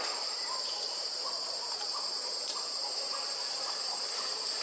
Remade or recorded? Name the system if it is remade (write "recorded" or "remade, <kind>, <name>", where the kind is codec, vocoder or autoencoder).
remade, vocoder, BigVGAN v2